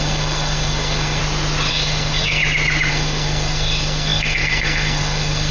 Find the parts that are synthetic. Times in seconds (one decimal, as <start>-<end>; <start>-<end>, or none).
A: 0.0-1.2; 1.7-2.4; 2.9-5.5